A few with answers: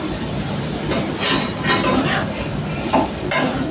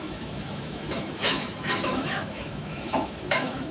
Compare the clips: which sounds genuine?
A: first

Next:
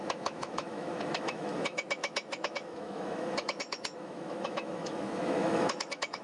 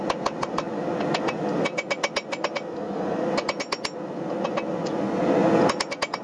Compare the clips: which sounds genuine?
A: second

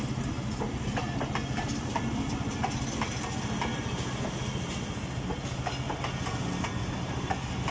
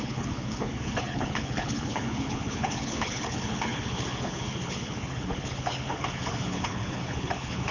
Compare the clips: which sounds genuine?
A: first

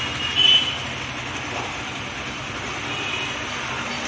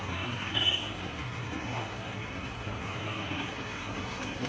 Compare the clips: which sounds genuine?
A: first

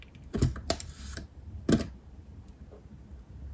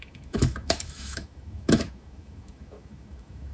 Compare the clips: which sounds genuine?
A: first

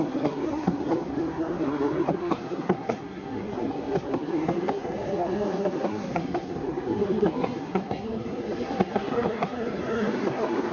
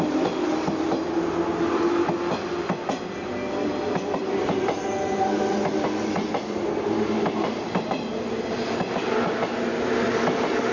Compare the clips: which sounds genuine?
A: second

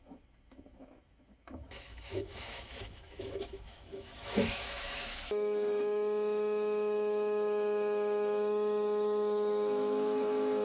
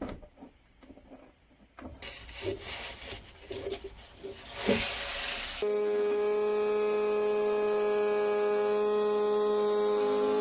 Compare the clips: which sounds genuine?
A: second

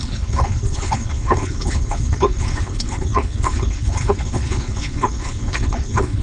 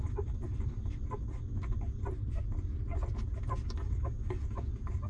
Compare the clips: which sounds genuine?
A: second